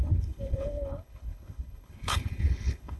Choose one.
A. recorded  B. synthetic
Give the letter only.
B